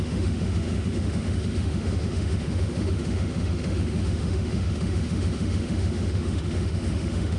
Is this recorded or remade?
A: remade